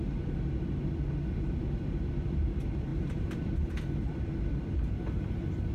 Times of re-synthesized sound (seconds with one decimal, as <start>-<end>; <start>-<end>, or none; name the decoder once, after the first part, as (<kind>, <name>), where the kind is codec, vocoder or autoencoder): 2.9-3.5 (vocoder, BigVGAN v2)